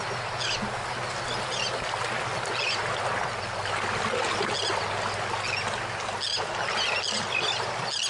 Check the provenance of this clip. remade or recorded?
recorded